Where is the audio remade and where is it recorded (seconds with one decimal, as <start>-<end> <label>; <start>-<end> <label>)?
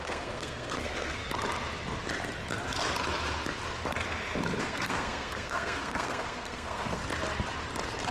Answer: 0.0-1.2 remade; 1.2-4.6 recorded; 4.6-7.0 remade; 7.0-8.1 recorded